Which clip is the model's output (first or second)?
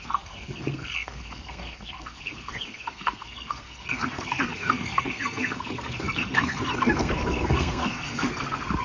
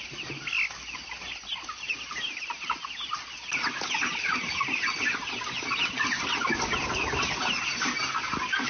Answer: first